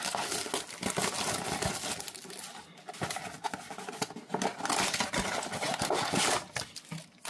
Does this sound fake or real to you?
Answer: real